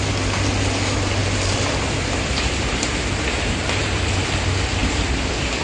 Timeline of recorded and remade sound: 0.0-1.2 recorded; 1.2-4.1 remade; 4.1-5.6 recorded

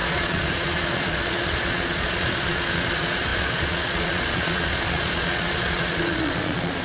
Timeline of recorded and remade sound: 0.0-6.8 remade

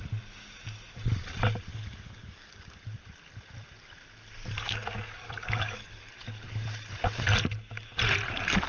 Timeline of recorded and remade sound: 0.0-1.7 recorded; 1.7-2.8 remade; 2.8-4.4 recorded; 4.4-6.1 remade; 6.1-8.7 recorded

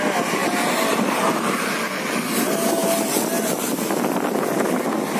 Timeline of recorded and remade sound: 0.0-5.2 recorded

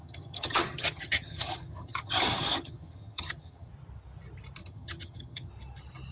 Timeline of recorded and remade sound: 0.0-3.7 remade; 3.7-4.6 recorded; 4.6-5.5 remade; 5.5-6.1 recorded